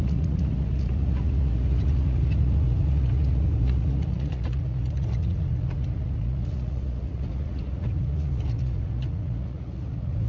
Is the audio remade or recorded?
remade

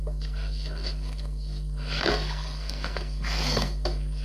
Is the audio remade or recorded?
remade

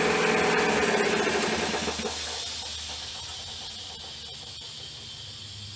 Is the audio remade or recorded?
recorded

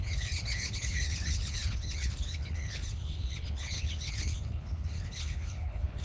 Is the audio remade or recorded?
remade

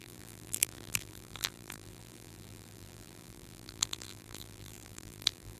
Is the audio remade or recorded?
remade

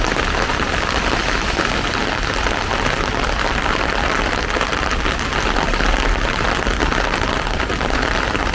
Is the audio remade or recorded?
recorded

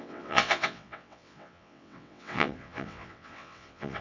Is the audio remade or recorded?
remade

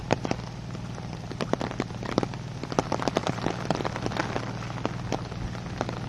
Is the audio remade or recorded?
recorded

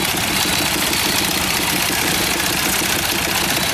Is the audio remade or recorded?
recorded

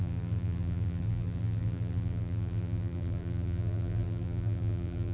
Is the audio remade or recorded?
remade